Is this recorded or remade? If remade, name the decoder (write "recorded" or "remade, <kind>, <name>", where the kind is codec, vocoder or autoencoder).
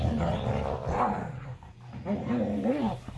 recorded